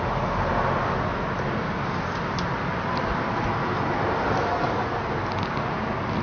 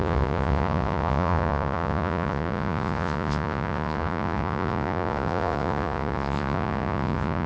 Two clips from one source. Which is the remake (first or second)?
second